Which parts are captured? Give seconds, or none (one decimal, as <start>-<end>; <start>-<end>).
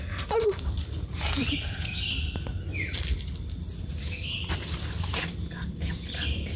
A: 0.0-6.6